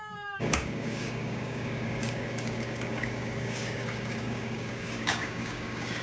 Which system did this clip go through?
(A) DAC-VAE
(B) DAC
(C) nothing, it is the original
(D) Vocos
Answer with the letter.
B